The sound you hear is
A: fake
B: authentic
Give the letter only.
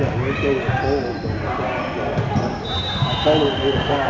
B